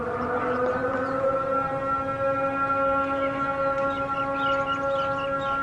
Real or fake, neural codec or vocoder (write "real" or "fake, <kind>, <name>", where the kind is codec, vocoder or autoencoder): real